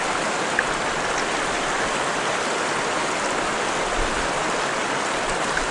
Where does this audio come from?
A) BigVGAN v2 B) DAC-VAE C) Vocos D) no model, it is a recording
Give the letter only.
D